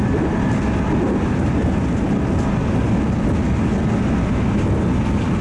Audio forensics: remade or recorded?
recorded